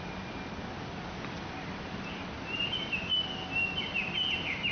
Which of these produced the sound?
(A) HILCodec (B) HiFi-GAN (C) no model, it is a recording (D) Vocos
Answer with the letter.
C